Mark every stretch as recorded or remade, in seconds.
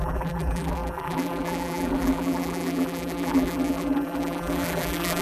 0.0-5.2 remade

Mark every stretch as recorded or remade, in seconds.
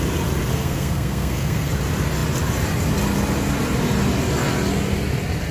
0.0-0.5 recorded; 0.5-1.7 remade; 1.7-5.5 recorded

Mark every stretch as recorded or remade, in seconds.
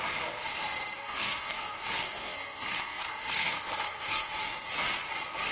0.0-1.0 recorded; 1.0-4.3 remade; 4.3-5.5 recorded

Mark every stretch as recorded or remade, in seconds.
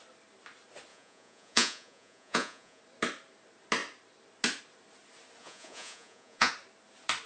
0.0-0.9 recorded; 0.9-2.8 remade; 2.8-5.4 recorded; 5.4-6.5 remade; 6.5-7.3 recorded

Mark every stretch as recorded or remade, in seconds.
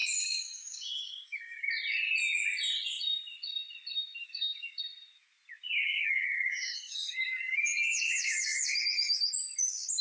0.0-1.7 remade; 1.7-4.2 recorded; 4.2-4.8 remade; 4.8-5.8 recorded; 5.8-8.8 remade; 8.8-10.0 recorded